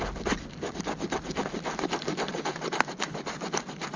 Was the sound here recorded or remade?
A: recorded